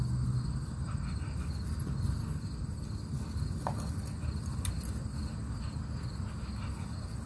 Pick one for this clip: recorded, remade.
recorded